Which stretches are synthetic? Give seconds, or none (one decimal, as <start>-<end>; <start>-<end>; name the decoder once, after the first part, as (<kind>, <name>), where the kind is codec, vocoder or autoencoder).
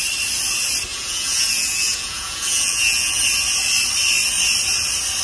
0.9-3.2 (vocoder, Vocos)